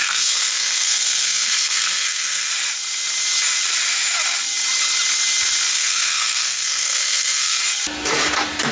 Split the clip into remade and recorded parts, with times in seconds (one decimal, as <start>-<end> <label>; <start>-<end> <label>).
0.0-2.5 remade; 2.5-5.7 recorded; 5.7-7.6 remade; 7.6-8.7 recorded